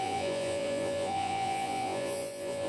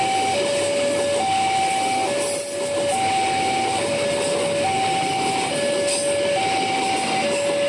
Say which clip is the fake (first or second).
first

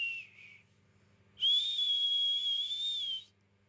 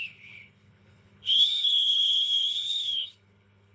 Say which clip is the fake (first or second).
second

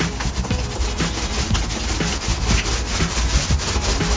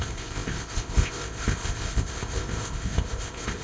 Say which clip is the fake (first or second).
second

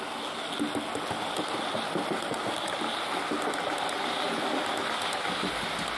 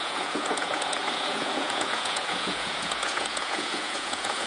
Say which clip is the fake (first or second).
second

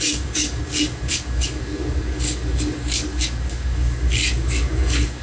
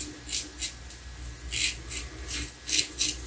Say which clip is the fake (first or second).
first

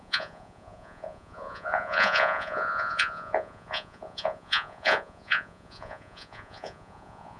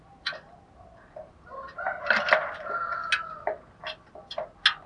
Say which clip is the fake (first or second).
first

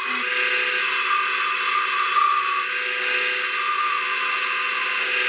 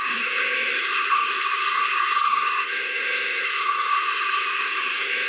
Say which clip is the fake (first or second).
second